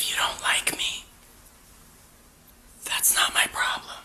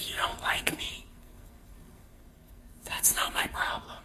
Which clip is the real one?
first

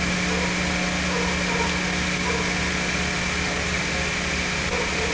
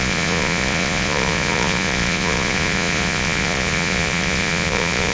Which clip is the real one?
first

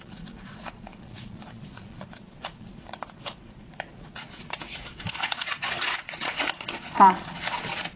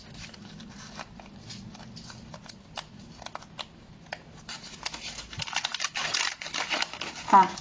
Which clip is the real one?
second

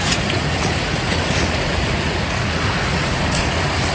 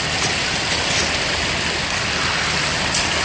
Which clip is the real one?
second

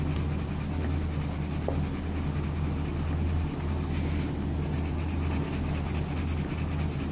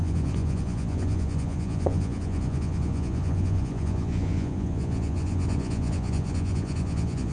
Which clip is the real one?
first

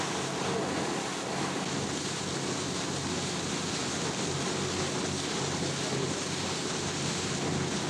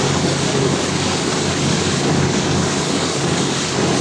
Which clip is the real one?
first